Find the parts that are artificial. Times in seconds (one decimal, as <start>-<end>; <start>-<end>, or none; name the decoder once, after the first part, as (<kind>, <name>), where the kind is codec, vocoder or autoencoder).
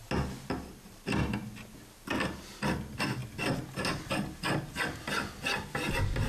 none